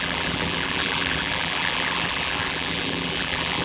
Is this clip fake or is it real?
fake